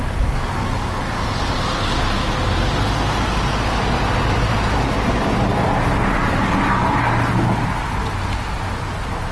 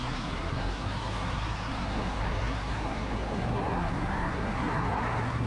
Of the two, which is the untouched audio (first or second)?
first